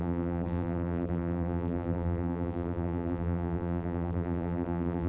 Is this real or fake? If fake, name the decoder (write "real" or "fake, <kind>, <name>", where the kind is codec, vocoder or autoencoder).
fake, vocoder, BigVGAN v2